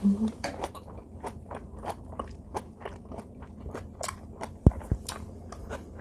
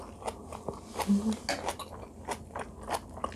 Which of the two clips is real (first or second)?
second